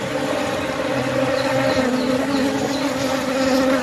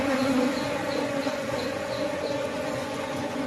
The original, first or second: first